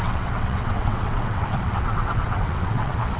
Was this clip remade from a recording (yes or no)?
yes